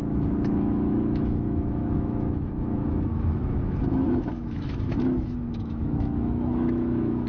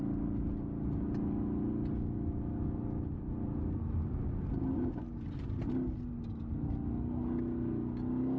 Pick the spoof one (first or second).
first